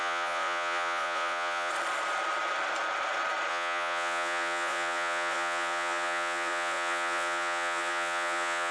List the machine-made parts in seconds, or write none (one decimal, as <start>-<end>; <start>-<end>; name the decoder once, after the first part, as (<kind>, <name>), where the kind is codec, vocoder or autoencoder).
0.0-1.7 (vocoder, Vocos); 3.5-8.7